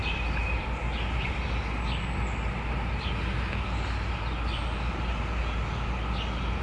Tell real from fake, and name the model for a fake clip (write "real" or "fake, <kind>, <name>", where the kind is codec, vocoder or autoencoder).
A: real